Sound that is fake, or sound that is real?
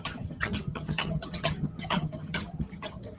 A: fake